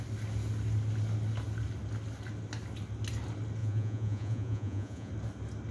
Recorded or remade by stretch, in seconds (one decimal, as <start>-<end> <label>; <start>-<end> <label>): 0.0-3.6 recorded; 3.6-5.1 remade; 5.1-5.7 recorded